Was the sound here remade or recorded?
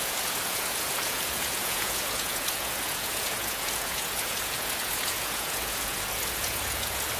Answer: remade